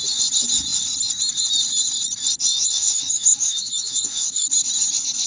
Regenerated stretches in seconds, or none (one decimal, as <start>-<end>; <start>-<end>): 2.5-4.5